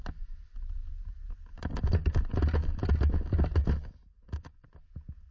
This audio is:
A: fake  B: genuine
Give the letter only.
B